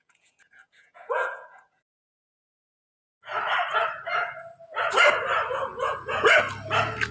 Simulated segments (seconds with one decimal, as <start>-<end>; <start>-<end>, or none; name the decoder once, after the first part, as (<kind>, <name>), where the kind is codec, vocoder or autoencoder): 0.0-1.9 (vocoder, Vocos); 5.7-6.4